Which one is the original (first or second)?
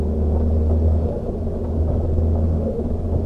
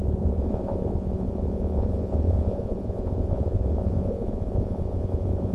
first